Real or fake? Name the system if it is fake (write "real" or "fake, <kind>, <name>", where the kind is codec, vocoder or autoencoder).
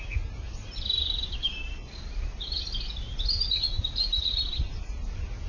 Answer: real